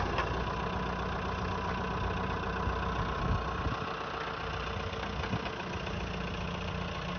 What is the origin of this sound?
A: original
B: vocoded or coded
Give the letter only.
A